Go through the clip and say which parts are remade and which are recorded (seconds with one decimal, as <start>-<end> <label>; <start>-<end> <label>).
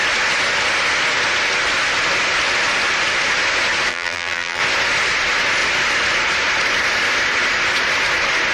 0.0-3.9 recorded; 3.9-4.6 remade; 4.6-8.5 recorded